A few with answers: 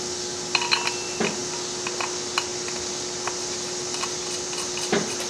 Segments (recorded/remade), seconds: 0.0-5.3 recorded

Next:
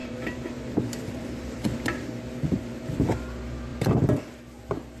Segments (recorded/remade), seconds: 0.0-3.0 remade; 3.0-3.7 recorded; 3.7-4.2 remade; 4.2-5.0 recorded

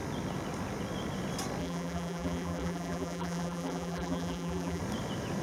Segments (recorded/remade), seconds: 0.0-1.6 recorded; 1.6-4.8 remade; 4.8-5.4 recorded

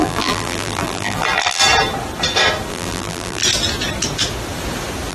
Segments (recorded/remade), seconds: 0.0-1.6 remade; 1.6-2.7 recorded; 2.7-3.4 remade; 3.4-5.1 recorded